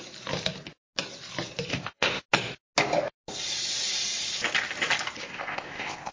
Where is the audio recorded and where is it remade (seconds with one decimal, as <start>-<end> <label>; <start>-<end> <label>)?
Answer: 0.0-1.7 recorded; 1.7-2.2 remade; 2.2-5.2 recorded; 5.2-6.1 remade